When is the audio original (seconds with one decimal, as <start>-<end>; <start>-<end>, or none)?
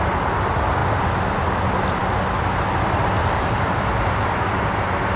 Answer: 0.0-5.2